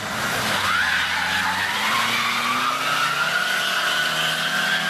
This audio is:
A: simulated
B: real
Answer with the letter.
B